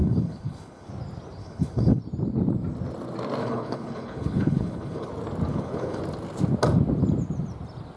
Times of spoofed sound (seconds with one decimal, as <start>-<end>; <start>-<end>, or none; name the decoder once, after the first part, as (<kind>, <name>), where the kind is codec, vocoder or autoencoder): 0.0-0.9 (codec, HILCodec); 1.4-2.0; 3.4-5.1; 5.5-6.0